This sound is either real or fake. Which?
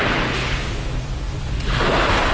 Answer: real